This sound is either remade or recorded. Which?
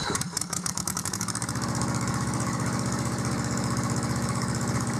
remade